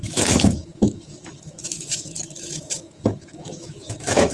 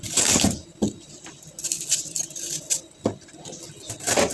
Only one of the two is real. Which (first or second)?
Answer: second